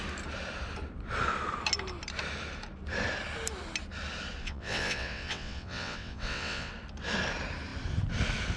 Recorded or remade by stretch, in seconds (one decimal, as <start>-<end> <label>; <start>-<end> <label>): 0.0-4.4 recorded; 4.4-6.7 remade; 6.7-8.6 recorded